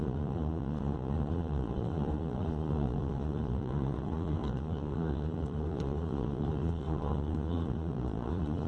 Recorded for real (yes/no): no